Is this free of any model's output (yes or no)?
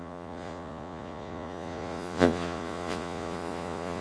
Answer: no